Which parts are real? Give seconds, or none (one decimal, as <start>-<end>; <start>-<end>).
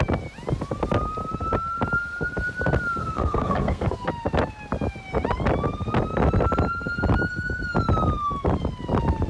0.0-3.0; 4.1-9.3